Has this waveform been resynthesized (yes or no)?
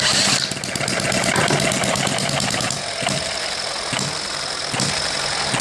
no